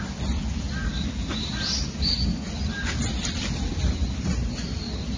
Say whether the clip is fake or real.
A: real